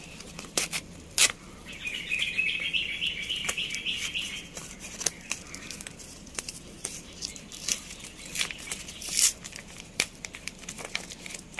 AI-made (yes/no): yes